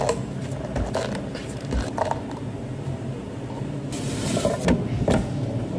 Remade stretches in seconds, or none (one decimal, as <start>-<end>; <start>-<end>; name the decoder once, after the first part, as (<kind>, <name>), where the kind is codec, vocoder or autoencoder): 1.4-3.2 (vocoder, BigVGAN v2)